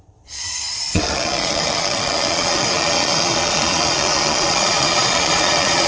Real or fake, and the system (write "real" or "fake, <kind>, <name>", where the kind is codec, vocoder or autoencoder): fake, vocoder, Vocos